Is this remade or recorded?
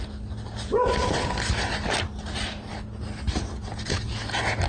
recorded